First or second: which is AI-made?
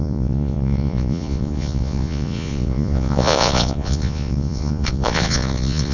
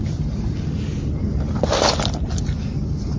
first